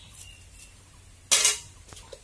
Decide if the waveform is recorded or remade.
recorded